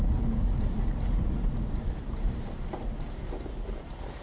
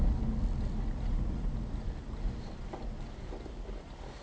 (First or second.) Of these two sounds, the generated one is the first